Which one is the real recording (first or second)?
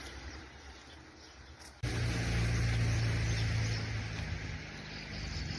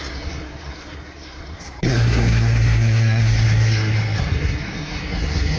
first